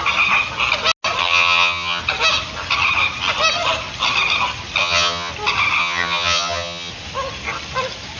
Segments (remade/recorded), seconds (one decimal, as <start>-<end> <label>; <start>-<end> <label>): 0.0-1.2 recorded; 1.2-2.0 remade; 2.0-4.8 recorded; 4.8-5.3 remade; 5.3-5.8 recorded; 5.8-6.9 remade; 6.9-8.2 recorded